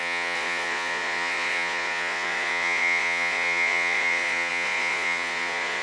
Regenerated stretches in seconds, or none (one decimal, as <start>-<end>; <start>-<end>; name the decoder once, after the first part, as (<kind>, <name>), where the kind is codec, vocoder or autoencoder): 0.0-5.8 (vocoder, Vocos)